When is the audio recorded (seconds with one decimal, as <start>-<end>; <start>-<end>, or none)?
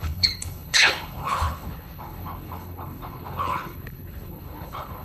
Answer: none